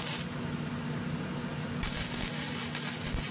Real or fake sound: real